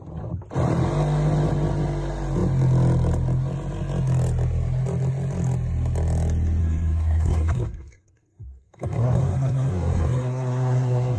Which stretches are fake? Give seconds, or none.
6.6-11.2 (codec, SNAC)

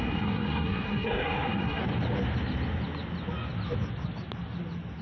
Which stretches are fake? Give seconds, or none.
0.0-1.8 (codec, SNAC)